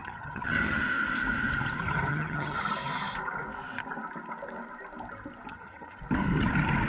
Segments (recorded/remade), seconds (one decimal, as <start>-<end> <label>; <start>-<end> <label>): 0.0-0.8 remade; 0.8-2.1 recorded; 2.1-2.6 remade; 2.6-5.5 recorded; 5.5-6.0 remade; 6.0-6.9 recorded